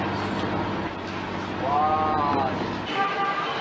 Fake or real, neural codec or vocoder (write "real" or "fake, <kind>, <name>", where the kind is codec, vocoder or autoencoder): real